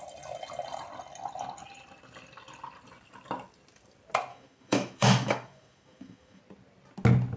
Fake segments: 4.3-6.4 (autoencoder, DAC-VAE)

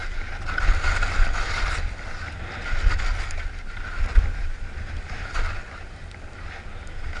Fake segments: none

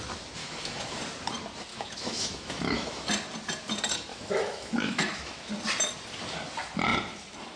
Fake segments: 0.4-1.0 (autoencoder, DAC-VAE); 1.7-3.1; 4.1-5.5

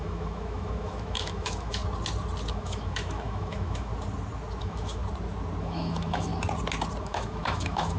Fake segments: 0.0-1.8 (autoencoder, DAC-VAE); 2.5-3.9; 4.6-5.0; 5.6-6.3; 7.0-8.0